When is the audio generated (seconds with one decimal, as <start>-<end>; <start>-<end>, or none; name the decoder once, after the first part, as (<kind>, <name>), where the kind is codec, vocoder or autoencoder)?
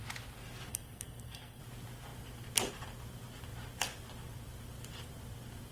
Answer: 0.7-1.6 (codec, SNAC)